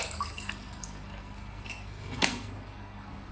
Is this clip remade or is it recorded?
remade